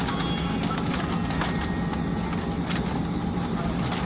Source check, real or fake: real